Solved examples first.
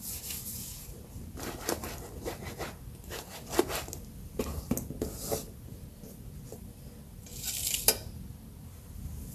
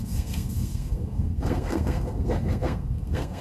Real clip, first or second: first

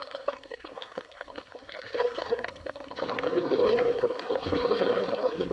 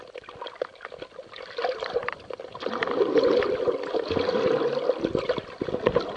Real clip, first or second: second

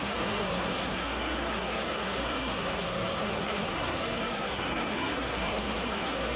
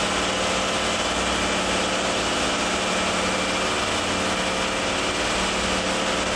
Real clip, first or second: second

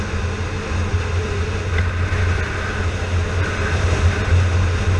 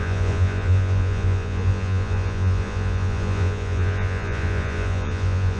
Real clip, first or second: first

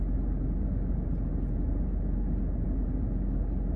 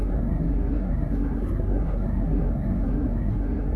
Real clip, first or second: first